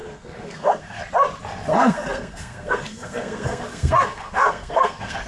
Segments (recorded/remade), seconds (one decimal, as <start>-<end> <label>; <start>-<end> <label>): 0.0-1.0 remade; 1.0-1.7 recorded; 1.7-5.3 remade